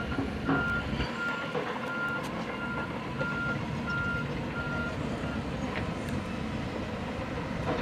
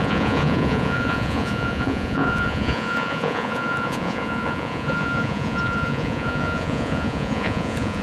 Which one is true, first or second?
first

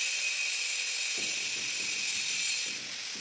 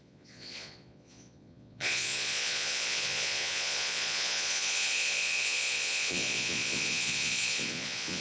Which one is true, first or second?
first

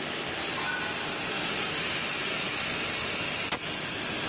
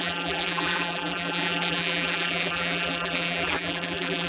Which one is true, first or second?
first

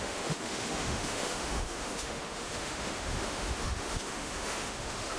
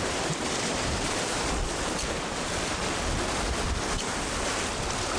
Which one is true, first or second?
second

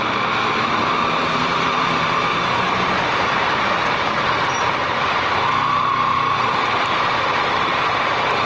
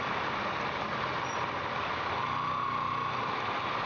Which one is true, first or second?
second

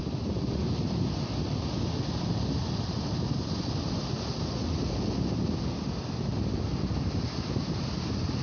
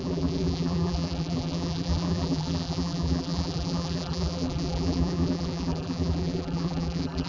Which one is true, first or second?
first